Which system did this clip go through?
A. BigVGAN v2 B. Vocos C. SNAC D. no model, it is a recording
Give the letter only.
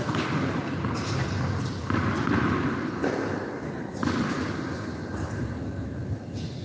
D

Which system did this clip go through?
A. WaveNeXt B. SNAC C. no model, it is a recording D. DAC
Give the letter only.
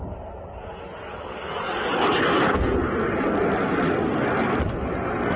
C